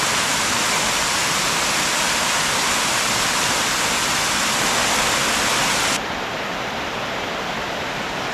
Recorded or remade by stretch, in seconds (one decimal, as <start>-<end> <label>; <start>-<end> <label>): 0.0-8.3 recorded